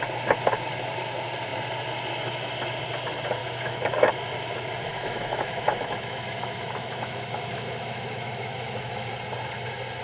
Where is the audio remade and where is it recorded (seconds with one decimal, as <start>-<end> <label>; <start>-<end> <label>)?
0.0-3.4 recorded; 3.4-4.1 remade; 4.1-4.9 recorded; 4.9-9.1 remade; 9.1-10.0 recorded